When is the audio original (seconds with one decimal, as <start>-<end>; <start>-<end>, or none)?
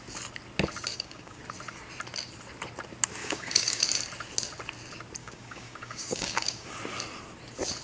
0.0-0.9; 1.4-3.2; 3.8-5.2; 6.8-7.8